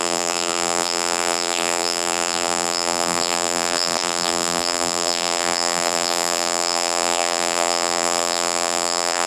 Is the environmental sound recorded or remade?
remade